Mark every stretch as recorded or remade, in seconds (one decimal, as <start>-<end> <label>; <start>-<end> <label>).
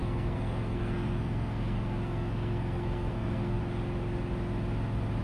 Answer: 0.0-3.6 remade; 3.6-5.2 recorded